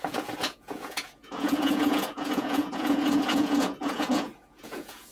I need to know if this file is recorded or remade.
remade